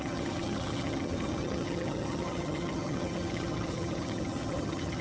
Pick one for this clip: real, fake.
fake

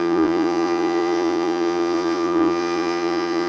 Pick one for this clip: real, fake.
fake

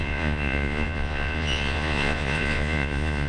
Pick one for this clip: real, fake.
fake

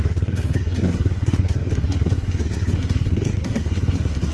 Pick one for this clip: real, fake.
fake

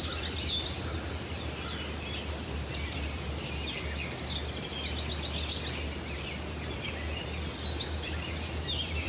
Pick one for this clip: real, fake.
real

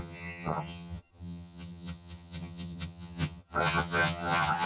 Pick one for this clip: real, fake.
fake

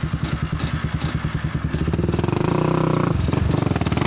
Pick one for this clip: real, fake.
real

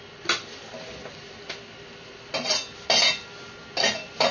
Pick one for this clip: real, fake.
real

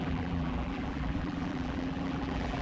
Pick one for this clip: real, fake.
fake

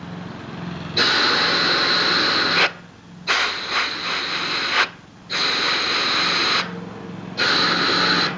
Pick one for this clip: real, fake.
real